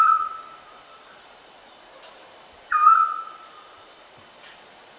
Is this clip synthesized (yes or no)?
no